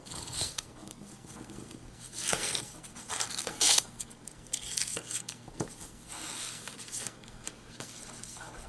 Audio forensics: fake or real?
fake